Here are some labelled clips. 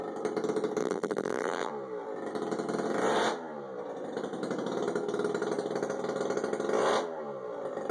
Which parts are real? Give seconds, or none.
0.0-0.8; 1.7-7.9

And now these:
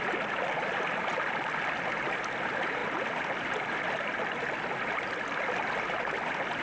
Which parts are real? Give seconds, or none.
0.0-6.6

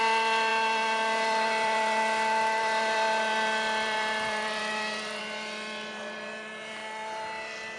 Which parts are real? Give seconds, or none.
6.8-7.8

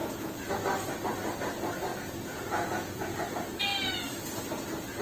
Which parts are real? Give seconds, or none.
0.5-1.9; 3.2-5.0

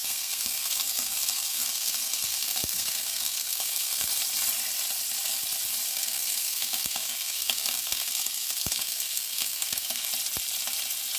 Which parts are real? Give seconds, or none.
4.1-5.9; 10.1-11.2

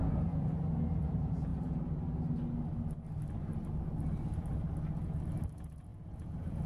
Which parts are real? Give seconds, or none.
1.5-5.5